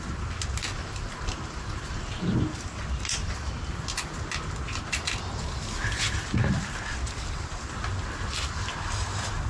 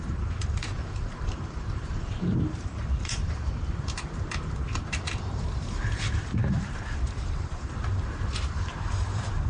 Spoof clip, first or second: second